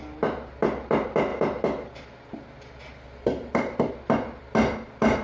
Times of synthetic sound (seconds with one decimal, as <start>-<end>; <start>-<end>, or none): none

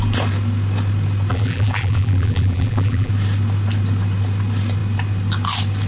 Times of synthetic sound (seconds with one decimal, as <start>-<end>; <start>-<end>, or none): 1.3-3.1

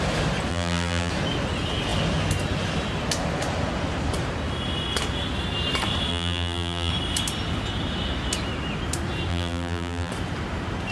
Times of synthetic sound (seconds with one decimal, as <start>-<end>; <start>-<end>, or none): 0.5-1.1; 6.1-6.9; 9.3-10.1

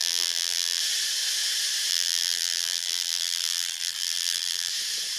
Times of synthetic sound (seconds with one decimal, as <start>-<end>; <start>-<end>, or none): 0.0-0.8; 1.9-4.7

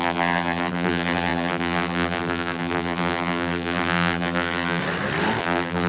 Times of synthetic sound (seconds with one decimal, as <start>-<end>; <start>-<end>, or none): 0.0-4.8; 5.4-5.9

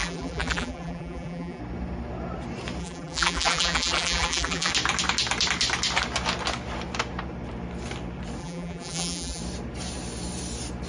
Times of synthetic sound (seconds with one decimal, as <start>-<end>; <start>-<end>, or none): 0.0-1.6; 2.8-4.7; 8.4-9.4

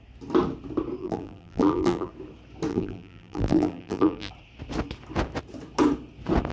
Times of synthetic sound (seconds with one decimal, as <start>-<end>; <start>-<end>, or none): 1.0-2.1; 2.7-4.3